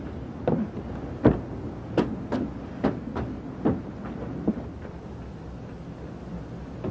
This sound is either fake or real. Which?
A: real